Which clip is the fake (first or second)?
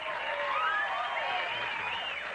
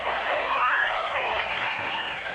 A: second